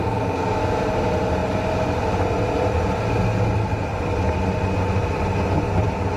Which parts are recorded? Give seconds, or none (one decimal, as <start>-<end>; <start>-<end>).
0.0-6.2